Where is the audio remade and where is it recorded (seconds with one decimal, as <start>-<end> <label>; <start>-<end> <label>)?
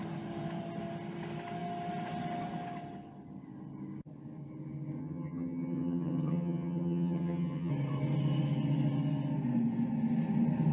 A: 0.0-5.0 recorded; 5.0-7.7 remade; 7.7-10.7 recorded